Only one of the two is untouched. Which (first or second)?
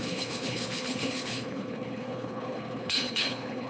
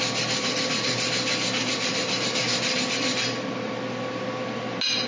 second